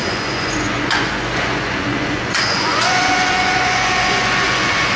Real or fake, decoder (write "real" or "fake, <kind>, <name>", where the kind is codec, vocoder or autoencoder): fake, vocoder, Vocos